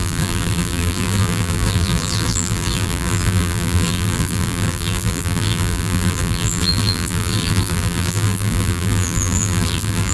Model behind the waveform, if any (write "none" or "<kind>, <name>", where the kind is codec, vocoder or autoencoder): vocoder, BigVGAN v2